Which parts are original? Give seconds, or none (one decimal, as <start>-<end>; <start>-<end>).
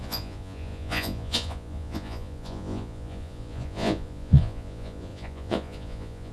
none